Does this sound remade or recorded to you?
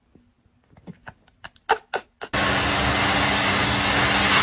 recorded